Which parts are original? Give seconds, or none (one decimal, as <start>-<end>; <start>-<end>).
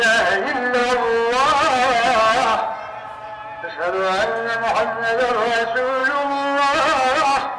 0.0-7.6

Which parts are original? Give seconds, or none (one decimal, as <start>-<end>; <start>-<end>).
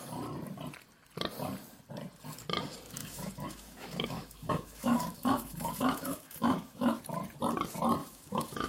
0.0-3.0; 7.0-8.0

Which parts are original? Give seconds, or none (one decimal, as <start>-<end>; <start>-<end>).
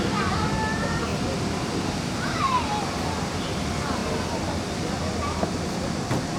0.0-6.4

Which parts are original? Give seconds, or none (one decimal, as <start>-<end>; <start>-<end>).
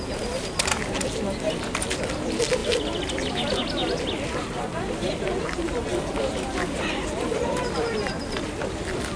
0.0-5.9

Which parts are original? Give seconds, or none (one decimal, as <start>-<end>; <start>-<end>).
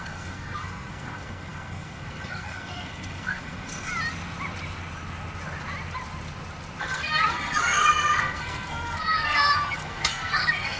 3.9-6.8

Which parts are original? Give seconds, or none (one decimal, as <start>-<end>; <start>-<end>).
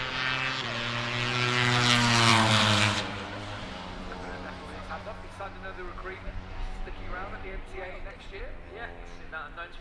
0.0-2.3; 5.0-6.0; 8.4-9.8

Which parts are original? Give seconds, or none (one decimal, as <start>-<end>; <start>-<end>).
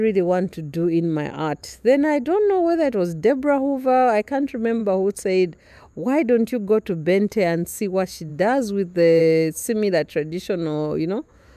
4.8-5.8; 8.3-9.2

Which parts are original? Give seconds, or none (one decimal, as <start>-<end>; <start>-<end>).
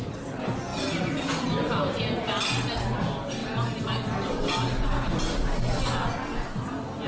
0.0-7.1